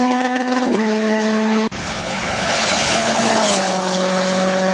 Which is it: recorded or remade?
remade